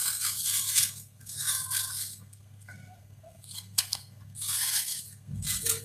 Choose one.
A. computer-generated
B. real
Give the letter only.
A